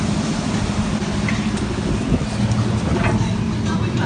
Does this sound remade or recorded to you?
recorded